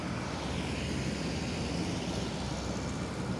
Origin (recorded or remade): recorded